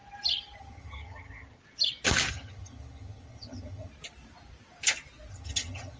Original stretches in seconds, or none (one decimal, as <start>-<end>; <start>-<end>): 0.0-0.6; 1.6-2.3; 3.9-5.3